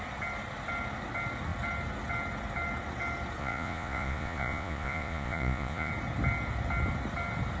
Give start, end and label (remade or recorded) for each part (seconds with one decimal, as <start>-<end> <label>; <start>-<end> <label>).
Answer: 0.0-3.4 recorded; 3.4-5.9 remade; 5.9-7.6 recorded